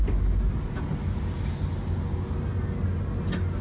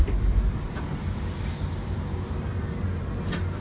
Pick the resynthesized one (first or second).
second